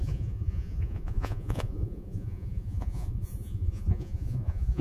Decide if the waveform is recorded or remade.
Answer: remade